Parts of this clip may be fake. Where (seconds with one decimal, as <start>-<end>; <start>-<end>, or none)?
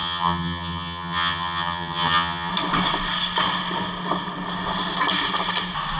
0.0-2.5